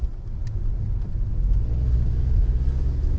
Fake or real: real